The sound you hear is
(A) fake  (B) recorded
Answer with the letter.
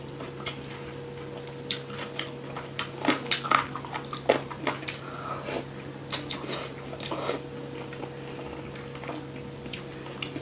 A